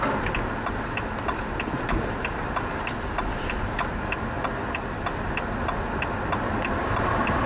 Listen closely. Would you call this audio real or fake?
real